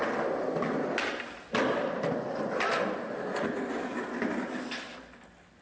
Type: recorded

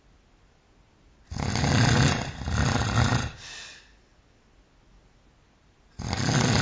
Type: recorded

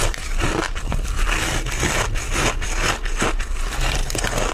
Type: recorded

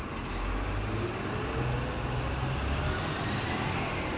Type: recorded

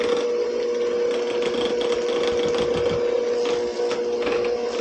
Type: recorded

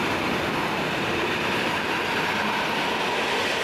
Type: recorded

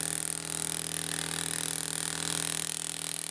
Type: recorded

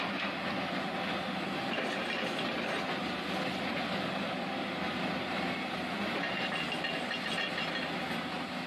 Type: recorded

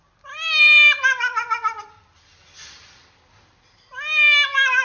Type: recorded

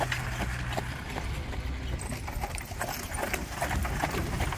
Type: recorded